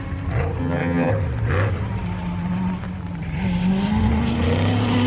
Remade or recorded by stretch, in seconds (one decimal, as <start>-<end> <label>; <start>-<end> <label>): 0.0-0.6 recorded; 0.6-1.1 remade; 1.1-5.1 recorded